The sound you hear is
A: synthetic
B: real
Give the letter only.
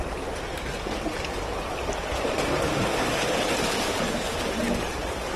B